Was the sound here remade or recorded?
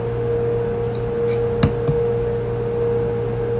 recorded